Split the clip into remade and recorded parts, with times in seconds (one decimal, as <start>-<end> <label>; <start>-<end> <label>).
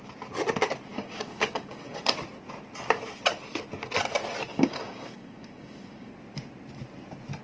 0.0-0.9 recorded; 0.9-2.0 remade; 2.0-4.5 recorded; 4.5-6.1 remade; 6.1-7.4 recorded